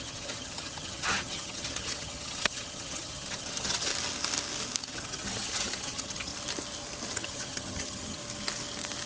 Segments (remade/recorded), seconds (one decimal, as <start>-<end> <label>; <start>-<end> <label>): 0.0-3.9 remade; 3.9-4.9 recorded; 4.9-6.3 remade; 6.3-7.1 recorded; 7.1-8.2 remade; 8.2-9.1 recorded